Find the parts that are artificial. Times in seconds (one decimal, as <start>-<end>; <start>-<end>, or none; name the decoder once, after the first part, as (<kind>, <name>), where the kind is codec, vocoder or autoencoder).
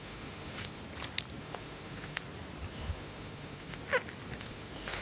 0.0-0.8 (autoencoder, DAC-VAE); 1.4-2.2; 2.7-3.8; 4.4-5.0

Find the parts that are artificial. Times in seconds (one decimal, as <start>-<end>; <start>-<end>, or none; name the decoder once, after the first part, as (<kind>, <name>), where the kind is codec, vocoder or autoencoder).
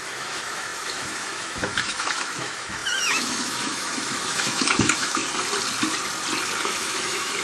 0.0-5.2 (autoencoder, DAC-VAE); 6.6-7.4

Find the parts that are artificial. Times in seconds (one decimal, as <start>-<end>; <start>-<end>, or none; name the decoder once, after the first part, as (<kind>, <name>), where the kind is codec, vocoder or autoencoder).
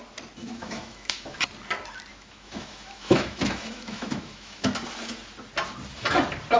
0.4-1.4 (autoencoder, DAC-VAE); 2.1-4.7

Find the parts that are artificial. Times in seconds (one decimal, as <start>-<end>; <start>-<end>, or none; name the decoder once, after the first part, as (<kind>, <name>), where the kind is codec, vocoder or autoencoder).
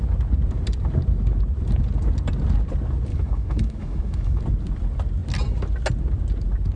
3.1-4.4 (autoencoder, DAC-VAE)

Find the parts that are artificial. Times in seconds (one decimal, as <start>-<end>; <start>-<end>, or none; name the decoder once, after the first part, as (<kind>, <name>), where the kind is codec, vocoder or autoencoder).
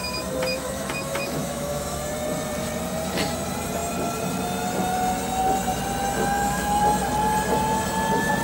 0.5-2.0 (autoencoder, DAC-VAE); 6.3-6.8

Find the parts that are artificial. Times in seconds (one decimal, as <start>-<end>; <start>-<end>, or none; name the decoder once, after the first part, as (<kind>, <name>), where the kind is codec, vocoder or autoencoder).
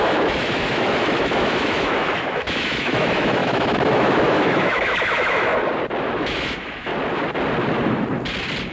0.0-5.5 (autoencoder, DAC-VAE); 6.0-6.9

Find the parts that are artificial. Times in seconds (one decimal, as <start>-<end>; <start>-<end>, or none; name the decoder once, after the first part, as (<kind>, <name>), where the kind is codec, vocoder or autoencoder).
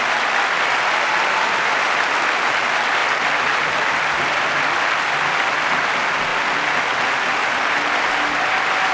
none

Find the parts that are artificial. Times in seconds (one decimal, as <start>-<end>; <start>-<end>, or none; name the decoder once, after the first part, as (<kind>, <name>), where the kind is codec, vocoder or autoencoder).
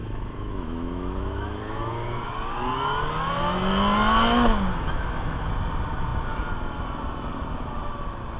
0.0-2.3 (autoencoder, DAC-VAE); 4.7-5.5